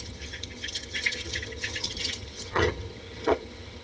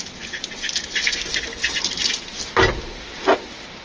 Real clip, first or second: second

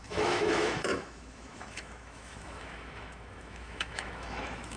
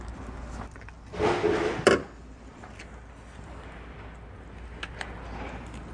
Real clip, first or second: second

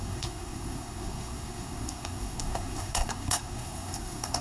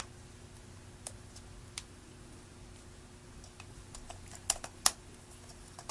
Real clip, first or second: second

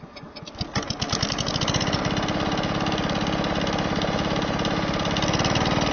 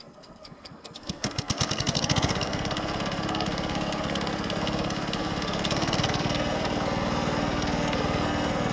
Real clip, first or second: first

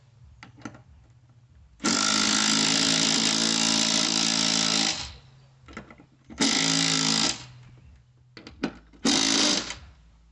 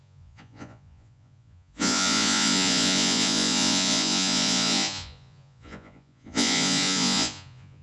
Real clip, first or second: first